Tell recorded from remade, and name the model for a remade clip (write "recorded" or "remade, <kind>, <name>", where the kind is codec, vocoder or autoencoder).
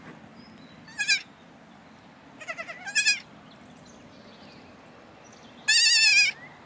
recorded